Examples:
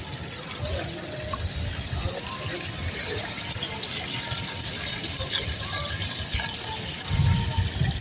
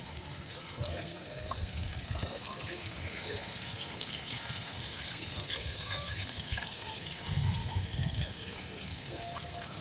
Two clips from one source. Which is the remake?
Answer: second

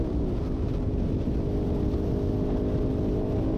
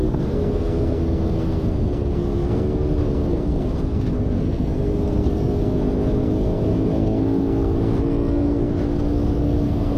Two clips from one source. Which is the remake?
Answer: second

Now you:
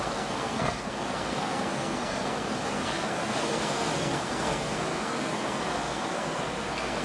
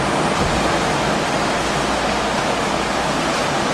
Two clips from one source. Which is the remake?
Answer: first